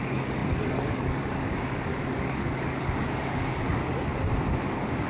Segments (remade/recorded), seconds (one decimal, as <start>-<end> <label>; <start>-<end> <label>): 0.0-4.1 remade; 4.1-4.6 recorded; 4.6-5.1 remade